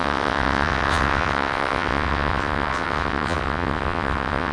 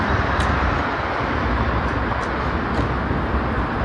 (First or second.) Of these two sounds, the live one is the second